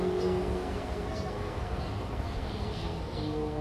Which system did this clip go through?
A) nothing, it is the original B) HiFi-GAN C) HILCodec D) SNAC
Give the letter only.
D